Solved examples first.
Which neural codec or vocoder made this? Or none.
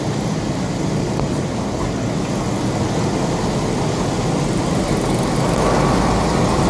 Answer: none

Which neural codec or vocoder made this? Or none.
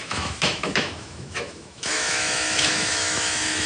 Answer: autoencoder, DAC-VAE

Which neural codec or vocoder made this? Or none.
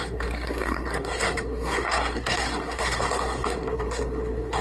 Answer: codec, SNAC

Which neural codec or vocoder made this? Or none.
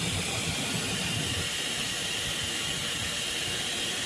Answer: none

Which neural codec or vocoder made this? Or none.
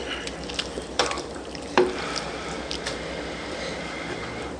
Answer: vocoder, BigVGAN v2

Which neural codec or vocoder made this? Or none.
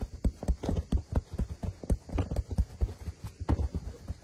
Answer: none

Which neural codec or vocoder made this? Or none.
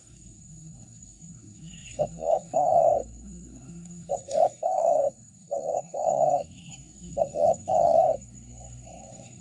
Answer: codec, SNAC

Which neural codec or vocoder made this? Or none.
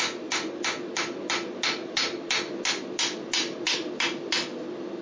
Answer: none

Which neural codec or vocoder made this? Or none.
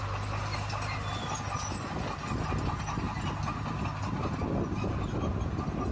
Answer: none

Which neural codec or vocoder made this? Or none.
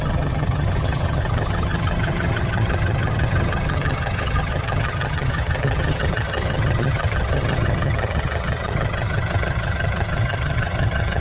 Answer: vocoder, HiFi-GAN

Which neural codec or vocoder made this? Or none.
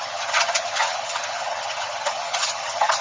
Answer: vocoder, HiFi-GAN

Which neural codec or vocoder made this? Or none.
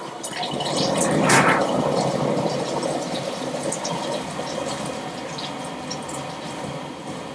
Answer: none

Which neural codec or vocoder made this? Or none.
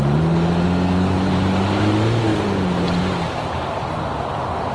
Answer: none